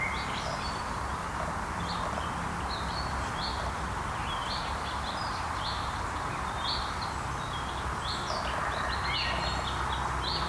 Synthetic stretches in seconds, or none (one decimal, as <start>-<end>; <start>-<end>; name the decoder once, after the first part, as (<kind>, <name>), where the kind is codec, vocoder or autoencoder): 4.4-7.1 (vocoder, BigVGAN v2)